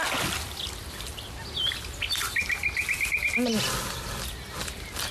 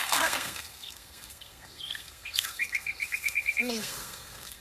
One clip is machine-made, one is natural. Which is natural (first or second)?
first